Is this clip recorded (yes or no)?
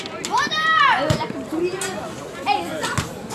yes